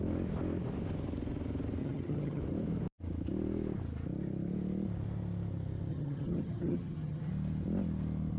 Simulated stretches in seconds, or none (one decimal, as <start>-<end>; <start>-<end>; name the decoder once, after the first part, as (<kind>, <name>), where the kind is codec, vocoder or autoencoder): 1.8-2.4 (vocoder, HiFi-GAN); 5.9-7.3

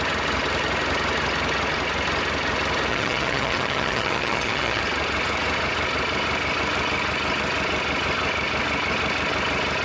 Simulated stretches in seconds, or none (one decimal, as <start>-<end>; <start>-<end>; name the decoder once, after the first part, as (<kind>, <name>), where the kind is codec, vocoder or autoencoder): 2.9-4.8 (vocoder, HiFi-GAN)

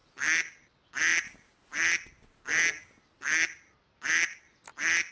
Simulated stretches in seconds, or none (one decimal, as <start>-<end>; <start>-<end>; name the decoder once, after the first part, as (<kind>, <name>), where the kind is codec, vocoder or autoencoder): none